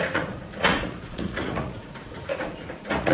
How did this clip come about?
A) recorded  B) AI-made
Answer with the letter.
B